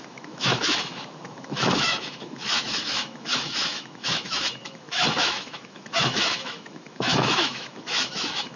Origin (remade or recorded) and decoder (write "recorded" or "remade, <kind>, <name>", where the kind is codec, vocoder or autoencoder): remade, autoencoder, DAC-VAE